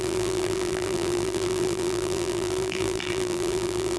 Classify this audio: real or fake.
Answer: fake